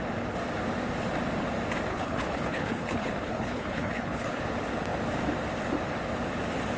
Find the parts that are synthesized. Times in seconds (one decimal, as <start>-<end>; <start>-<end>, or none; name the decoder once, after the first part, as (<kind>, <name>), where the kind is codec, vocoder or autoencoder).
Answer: 1.9-4.4 (codec, HILCodec)